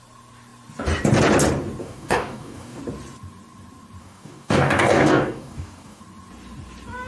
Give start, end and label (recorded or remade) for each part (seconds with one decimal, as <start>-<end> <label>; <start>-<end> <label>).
0.0-1.8 recorded; 1.8-2.8 remade; 2.8-4.0 recorded; 4.0-6.0 remade; 6.0-7.1 recorded